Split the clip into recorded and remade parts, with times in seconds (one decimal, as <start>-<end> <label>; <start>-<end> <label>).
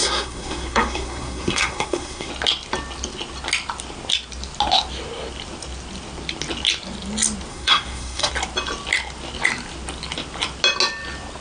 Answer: 0.0-2.3 remade; 2.3-7.5 recorded; 7.5-8.3 remade; 8.3-11.4 recorded